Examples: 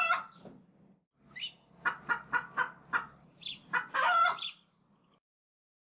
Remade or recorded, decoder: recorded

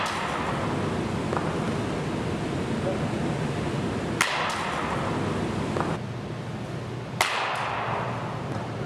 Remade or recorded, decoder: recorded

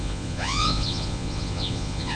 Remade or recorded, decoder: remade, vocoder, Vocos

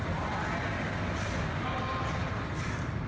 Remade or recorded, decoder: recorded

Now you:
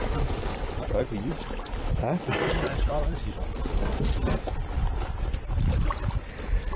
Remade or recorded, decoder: remade, vocoder, BigVGAN v2